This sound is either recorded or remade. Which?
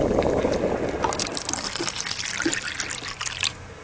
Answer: recorded